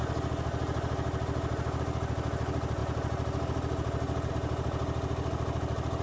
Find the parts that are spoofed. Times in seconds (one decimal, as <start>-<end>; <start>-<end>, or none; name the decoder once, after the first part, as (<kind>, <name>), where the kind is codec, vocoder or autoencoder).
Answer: none